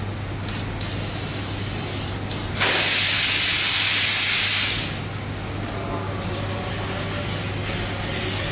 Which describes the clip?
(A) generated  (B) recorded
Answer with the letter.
B